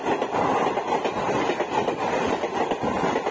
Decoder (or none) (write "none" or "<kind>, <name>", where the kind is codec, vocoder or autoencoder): none